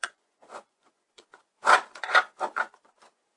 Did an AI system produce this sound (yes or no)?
yes